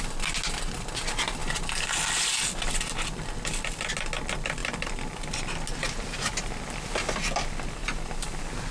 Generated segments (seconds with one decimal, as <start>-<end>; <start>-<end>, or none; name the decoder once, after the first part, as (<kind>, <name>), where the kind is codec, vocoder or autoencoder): 4.6-5.2 (vocoder, BigVGAN v2)